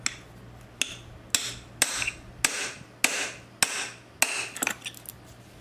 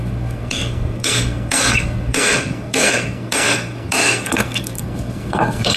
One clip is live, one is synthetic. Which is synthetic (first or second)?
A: second